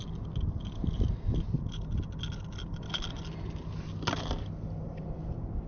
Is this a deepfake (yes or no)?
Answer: no